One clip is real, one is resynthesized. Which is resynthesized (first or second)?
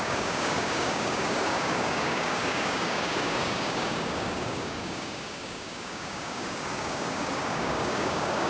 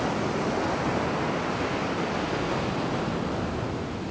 first